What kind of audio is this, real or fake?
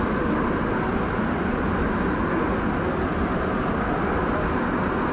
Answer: real